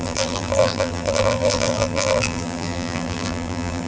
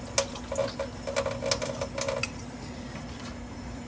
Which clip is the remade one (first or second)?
first